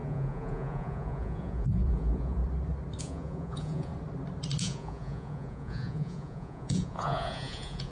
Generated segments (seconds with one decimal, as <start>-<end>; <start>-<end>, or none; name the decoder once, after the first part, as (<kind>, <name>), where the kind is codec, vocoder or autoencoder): 0.0-2.4 (vocoder, Vocos); 3.0-3.9; 4.6-7.9